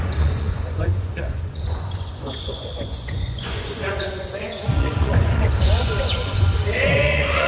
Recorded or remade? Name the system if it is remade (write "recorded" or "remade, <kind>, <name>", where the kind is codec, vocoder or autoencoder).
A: remade, vocoder, Vocos